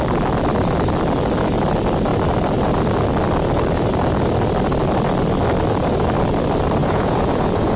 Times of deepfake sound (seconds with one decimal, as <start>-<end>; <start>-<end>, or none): 6.8-7.8